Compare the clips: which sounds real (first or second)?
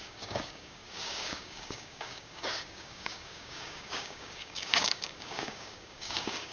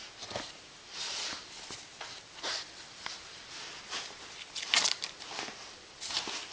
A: second